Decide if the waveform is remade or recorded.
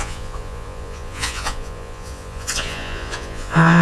remade